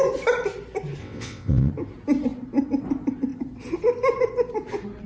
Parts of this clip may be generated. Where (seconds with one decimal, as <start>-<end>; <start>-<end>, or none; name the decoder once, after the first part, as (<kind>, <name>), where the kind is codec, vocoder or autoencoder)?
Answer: 1.0-1.7 (vocoder, WaveNeXt)